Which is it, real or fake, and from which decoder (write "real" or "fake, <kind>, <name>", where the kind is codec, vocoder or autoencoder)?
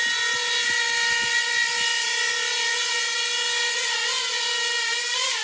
real